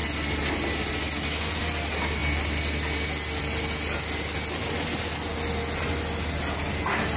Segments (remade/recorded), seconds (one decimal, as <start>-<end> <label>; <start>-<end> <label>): 0.0-7.2 recorded